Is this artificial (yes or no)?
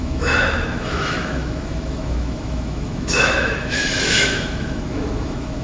yes